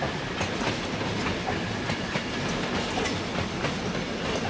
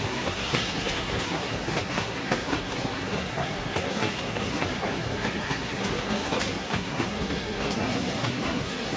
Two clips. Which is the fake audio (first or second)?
second